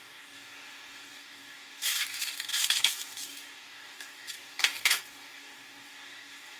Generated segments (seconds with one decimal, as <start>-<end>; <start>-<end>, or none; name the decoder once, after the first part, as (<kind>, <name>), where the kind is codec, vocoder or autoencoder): 0.0-6.6 (codec, DAC)